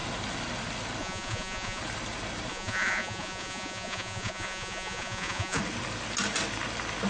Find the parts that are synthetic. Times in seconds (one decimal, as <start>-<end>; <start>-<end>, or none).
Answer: 1.0-1.8; 2.5-5.6